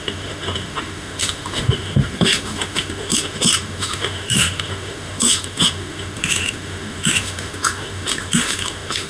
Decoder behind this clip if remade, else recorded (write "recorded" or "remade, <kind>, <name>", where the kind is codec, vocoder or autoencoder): remade, autoencoder, DAC-VAE